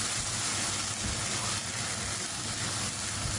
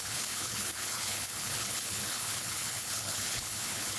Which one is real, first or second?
first